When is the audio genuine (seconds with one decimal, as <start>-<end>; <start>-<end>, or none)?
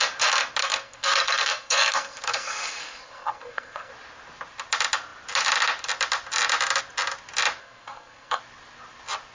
0.0-0.6; 3.9-7.6; 8.4-9.3